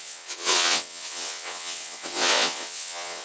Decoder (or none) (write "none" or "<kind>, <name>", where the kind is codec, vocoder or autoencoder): vocoder, WaveNeXt